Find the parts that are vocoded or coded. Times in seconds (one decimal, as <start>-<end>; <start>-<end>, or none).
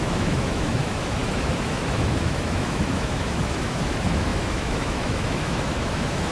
0.0-6.3